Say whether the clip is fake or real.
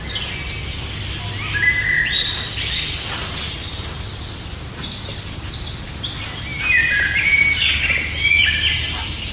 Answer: real